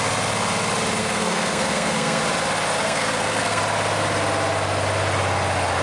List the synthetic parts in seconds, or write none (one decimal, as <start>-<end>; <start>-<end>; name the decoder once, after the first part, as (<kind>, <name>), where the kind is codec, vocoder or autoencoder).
1.0-2.2 (codec, SNAC); 2.8-3.6